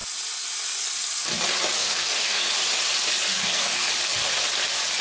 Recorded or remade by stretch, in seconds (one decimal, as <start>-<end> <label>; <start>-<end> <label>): 0.0-1.8 recorded; 1.8-2.5 remade; 2.5-3.3 recorded; 3.3-3.9 remade; 3.9-5.0 recorded